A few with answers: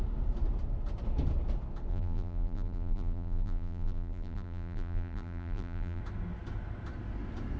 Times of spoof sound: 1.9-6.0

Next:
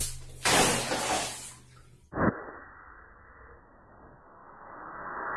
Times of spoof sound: none

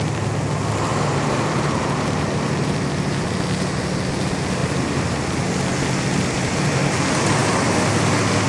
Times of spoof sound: 0.9-3.2; 4.6-5.2

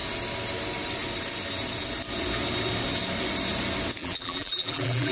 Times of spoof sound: 4.0-5.1